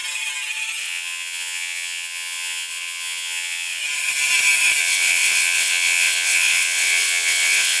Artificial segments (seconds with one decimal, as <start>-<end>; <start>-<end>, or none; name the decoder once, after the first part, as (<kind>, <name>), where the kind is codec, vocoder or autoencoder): 0.8-3.8 (vocoder, WaveNeXt); 4.8-7.8